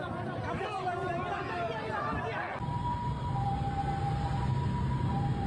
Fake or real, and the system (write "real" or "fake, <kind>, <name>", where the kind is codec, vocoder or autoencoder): real